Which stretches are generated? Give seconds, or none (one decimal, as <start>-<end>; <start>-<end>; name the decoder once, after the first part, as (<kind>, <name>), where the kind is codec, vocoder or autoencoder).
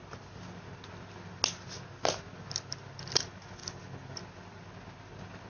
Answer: none